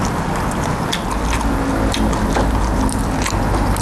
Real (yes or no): yes